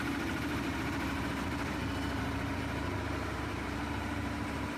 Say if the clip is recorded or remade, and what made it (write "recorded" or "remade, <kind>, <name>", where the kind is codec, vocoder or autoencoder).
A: remade, vocoder, BigVGAN v2